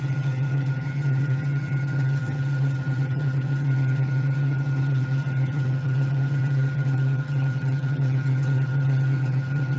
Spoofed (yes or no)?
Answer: yes